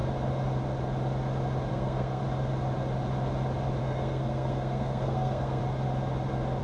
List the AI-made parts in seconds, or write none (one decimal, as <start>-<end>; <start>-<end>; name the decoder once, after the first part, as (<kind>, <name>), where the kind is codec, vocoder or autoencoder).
1.7-2.2 (codec, SNAC); 3.8-5.6